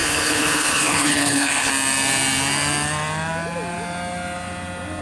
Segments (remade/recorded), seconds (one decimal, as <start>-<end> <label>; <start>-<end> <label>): 0.0-1.7 remade; 1.7-5.0 recorded

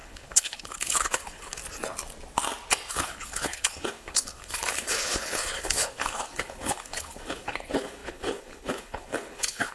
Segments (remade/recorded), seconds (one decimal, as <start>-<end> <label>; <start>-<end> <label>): 0.0-1.6 remade; 1.6-2.9 recorded; 2.9-9.7 remade

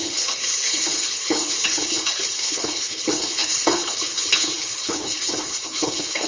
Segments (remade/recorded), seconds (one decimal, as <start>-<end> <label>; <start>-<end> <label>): 0.0-6.3 remade

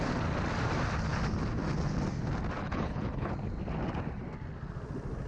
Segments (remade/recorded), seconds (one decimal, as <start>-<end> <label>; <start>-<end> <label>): 0.0-2.6 recorded; 2.6-3.3 remade; 3.3-5.3 recorded

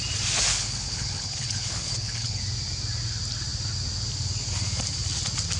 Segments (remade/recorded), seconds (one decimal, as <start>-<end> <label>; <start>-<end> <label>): 0.0-0.5 recorded; 0.5-2.4 remade; 2.4-5.6 recorded

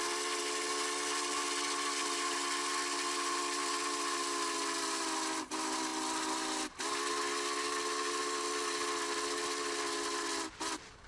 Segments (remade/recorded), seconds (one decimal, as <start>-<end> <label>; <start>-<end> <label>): 0.0-11.1 recorded

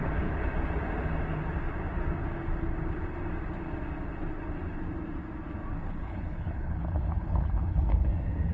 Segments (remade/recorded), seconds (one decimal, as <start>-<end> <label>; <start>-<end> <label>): 0.0-5.8 recorded; 5.8-8.1 remade; 8.1-8.5 recorded